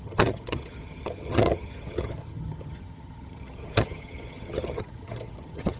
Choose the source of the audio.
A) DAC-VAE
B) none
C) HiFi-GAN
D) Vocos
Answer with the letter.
C